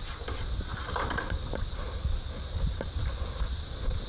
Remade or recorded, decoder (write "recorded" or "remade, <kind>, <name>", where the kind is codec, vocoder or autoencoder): recorded